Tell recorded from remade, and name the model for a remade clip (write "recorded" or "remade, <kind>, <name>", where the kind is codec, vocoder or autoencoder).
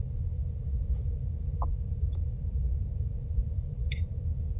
remade, vocoder, BigVGAN v2